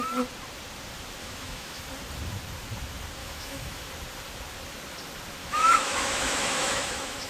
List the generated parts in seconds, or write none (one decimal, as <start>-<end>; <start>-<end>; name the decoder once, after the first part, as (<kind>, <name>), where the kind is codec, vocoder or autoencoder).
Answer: 1.2-1.8 (autoencoder, DAC-VAE); 3.2-3.9; 5.4-7.3